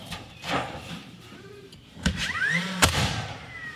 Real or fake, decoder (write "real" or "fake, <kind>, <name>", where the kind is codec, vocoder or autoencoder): fake, vocoder, BigVGAN v2